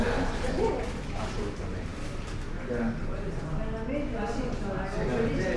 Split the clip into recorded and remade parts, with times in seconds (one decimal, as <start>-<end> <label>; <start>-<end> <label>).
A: 0.0-5.6 recorded